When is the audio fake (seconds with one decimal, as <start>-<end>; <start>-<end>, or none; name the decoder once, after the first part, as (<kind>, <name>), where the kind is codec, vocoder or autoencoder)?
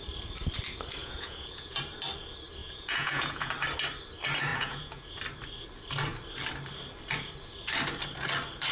1.0-1.8 (vocoder, Vocos); 2.6-3.5; 4.5-5.2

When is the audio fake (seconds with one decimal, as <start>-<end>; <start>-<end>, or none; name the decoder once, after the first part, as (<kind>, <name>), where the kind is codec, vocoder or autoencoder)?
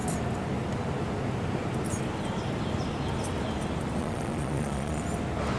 4.0-5.0 (vocoder, Vocos)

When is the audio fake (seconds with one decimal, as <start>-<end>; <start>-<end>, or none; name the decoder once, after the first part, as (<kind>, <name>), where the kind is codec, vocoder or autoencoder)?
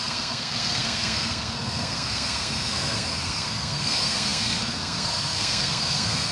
0.0-6.3 (codec, SNAC)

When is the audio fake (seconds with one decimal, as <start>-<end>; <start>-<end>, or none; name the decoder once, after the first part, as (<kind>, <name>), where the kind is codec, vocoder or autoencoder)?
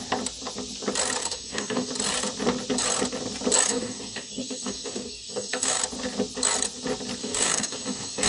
1.2-1.9 (codec, DAC); 3.7-5.8; 7.2-8.3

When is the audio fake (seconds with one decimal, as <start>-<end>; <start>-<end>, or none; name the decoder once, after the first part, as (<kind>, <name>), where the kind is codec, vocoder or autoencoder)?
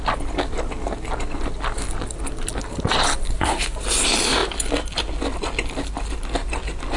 none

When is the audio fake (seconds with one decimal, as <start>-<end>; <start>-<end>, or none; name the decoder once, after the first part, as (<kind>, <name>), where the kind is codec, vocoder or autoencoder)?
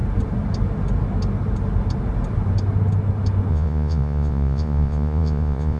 3.5-5.8 (vocoder, Vocos)